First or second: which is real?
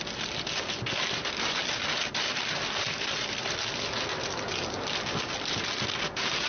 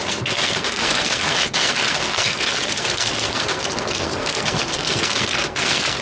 first